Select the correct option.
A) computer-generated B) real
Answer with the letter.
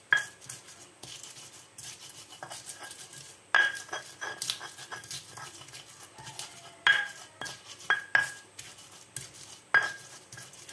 B